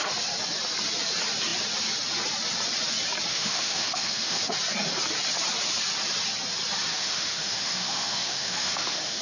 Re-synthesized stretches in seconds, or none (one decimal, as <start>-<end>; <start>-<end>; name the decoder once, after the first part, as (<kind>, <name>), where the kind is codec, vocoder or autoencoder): 3.3-4.4 (autoencoder, DAC-VAE); 6.9-9.2